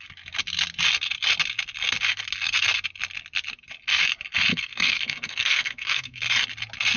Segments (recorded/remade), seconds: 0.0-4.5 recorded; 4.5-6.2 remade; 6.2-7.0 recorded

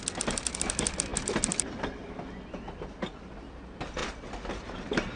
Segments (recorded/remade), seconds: 0.0-5.2 recorded

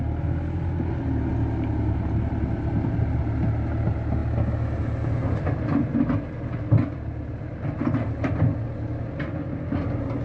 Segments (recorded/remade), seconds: 0.0-10.2 recorded